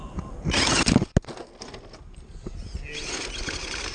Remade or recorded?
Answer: recorded